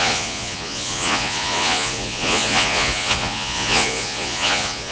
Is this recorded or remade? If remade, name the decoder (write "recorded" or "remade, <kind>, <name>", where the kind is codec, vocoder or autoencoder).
remade, vocoder, Vocos